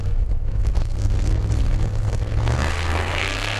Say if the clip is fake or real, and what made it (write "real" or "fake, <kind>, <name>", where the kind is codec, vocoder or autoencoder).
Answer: fake, codec, SNAC